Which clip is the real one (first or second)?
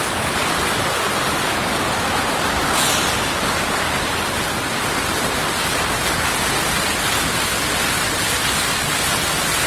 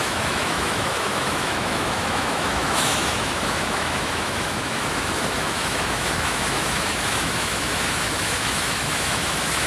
first